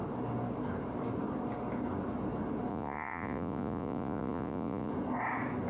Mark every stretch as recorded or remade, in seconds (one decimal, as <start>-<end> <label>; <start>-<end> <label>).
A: 0.0-2.7 recorded; 2.7-4.9 remade; 4.9-5.7 recorded